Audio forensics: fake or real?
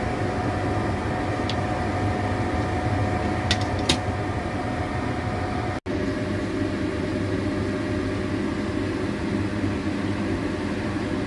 real